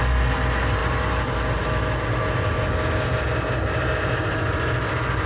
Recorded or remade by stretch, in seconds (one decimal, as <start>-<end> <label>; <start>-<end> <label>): 0.0-5.3 recorded